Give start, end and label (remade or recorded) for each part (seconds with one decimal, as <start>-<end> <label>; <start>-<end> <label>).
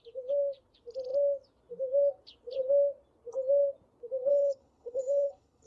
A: 0.0-4.3 recorded; 4.3-5.7 remade